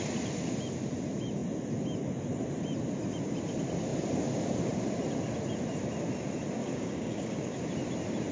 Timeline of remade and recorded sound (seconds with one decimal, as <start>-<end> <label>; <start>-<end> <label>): 0.0-6.6 recorded; 6.6-7.6 remade; 7.6-8.3 recorded

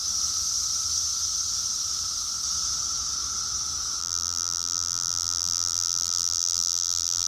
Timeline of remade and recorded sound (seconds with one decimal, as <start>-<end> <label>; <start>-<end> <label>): 0.0-4.0 recorded; 4.0-7.3 remade

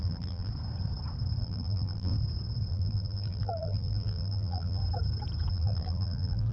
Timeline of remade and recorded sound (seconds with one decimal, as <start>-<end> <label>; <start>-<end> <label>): 0.0-0.5 remade; 0.5-1.4 recorded; 1.4-2.1 remade; 2.1-2.7 recorded; 2.7-4.8 remade; 4.8-5.5 recorded; 5.5-6.5 remade

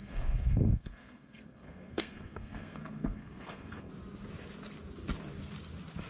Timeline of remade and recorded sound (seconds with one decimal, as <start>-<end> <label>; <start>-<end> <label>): 0.0-3.9 remade; 3.9-6.1 recorded